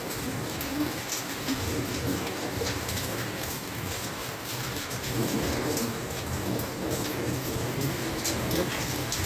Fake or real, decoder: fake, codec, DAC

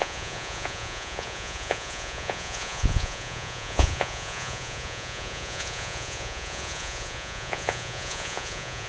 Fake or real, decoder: fake, vocoder, Vocos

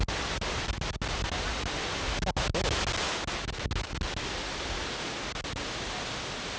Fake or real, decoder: real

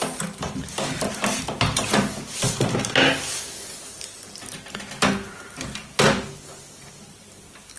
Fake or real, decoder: real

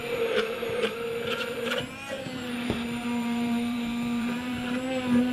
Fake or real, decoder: fake, vocoder, BigVGAN v2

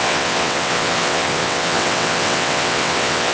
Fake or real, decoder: fake, vocoder, WaveNeXt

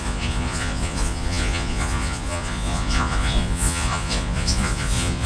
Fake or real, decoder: fake, vocoder, Vocos